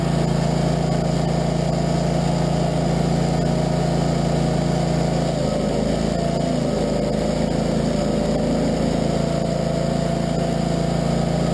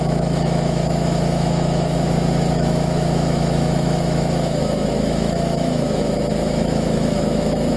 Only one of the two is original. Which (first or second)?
first